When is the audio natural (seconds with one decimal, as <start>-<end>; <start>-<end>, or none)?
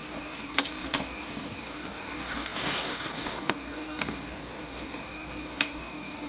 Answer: none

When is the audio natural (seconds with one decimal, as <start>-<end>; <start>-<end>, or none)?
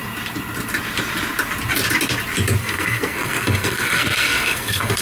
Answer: 0.0-2.6